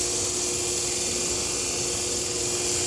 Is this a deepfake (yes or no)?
no